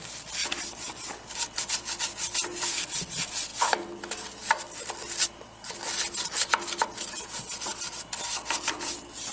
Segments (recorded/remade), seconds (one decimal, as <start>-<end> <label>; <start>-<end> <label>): 0.0-9.3 recorded